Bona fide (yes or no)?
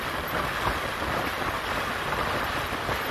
yes